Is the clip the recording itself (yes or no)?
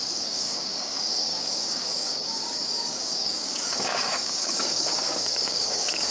no